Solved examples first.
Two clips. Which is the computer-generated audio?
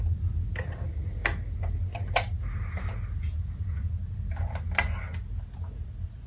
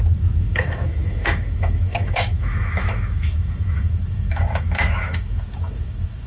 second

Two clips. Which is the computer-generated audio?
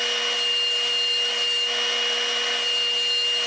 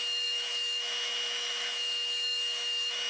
second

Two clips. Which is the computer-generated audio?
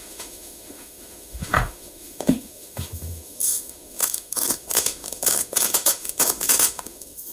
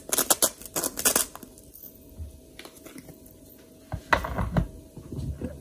first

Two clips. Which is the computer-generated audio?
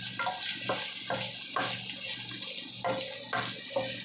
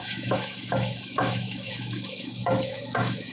second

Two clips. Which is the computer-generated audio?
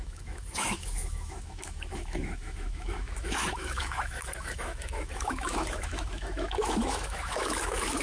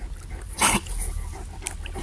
first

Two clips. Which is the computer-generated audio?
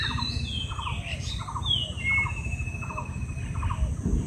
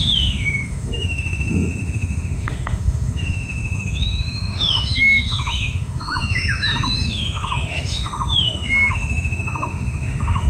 second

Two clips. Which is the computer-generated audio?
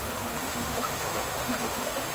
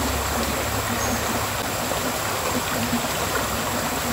first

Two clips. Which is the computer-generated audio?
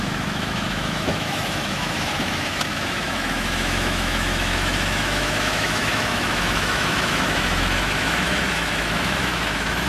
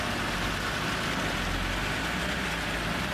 first